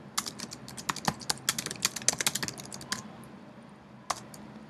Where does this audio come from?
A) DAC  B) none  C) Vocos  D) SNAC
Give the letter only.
B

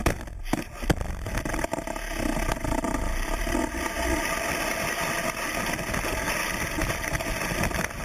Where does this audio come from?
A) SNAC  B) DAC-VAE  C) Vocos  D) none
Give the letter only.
D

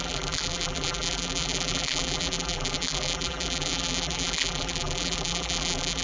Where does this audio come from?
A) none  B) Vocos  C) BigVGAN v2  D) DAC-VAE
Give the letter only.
C